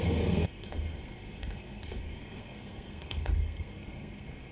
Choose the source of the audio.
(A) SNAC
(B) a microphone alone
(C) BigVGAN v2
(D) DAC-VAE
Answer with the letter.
A